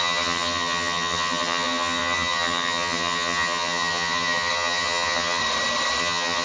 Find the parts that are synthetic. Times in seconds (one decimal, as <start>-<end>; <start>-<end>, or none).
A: 0.0-5.4; 6.0-6.4